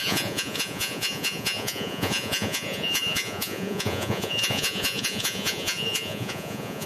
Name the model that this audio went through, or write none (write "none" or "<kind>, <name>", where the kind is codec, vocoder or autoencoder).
vocoder, Vocos